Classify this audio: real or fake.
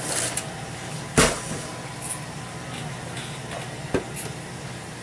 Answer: real